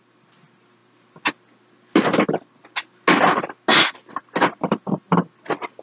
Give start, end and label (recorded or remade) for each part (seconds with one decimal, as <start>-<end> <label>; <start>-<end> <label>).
0.0-5.8 recorded